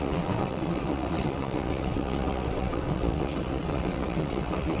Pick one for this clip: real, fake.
fake